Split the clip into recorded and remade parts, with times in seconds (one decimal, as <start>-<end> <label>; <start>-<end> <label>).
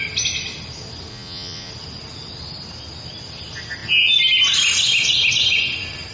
0.0-1.1 recorded; 1.1-1.7 remade; 1.7-6.1 recorded